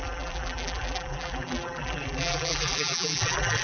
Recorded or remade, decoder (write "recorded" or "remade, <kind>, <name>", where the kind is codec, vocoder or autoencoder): remade, vocoder, BigVGAN v2